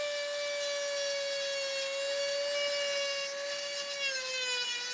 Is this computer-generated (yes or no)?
no